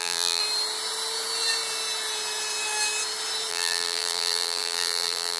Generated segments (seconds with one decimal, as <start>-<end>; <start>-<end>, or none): 0.0-0.4; 3.5-5.4